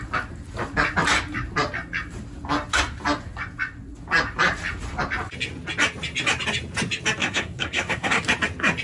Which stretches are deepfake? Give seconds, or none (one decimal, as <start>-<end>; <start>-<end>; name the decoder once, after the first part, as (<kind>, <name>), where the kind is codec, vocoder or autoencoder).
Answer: 7.2-8.2 (codec, SNAC)